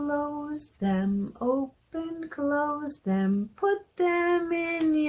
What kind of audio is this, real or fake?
real